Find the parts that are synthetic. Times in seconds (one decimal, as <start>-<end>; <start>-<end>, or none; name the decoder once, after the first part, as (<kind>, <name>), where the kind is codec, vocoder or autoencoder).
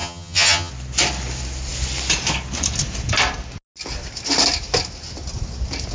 0.0-0.7 (vocoder, HiFi-GAN)